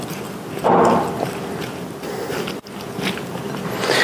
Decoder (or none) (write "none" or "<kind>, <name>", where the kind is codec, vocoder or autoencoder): none